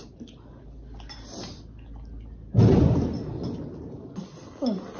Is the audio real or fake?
real